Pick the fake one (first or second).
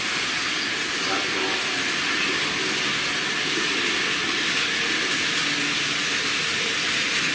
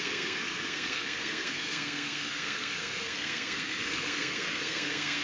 second